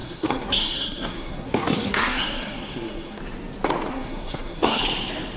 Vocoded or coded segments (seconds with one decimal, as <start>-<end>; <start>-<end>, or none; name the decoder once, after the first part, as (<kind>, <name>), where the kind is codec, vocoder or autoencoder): 0.0-3.2 (codec, SNAC); 3.9-4.8